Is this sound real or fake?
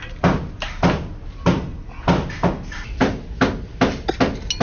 real